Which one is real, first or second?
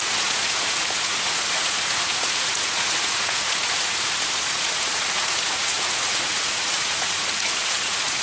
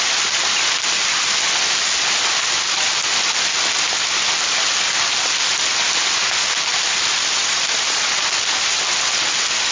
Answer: second